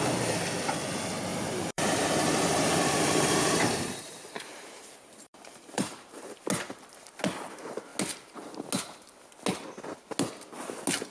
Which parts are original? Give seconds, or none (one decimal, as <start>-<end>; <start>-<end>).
0.0-1.3; 6.4-11.1